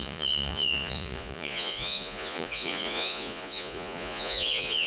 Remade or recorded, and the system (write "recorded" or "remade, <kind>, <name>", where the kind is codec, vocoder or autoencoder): remade, vocoder, Vocos